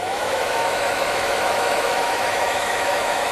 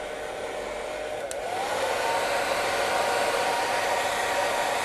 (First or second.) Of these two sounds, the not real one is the first